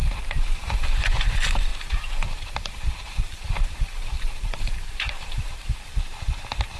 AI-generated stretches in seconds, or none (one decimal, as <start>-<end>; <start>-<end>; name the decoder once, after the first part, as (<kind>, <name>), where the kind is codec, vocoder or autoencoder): 0.0-1.1 (vocoder, BigVGAN v2); 1.7-5.8